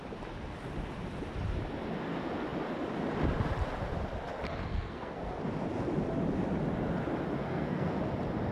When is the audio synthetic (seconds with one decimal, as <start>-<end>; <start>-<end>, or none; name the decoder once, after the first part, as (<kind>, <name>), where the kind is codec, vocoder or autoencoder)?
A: 4.7-5.4 (codec, SNAC); 7.4-8.0